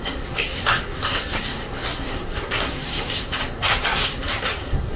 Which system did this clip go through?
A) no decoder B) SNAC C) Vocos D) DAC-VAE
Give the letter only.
B